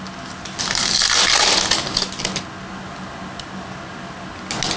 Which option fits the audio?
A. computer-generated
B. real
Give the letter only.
B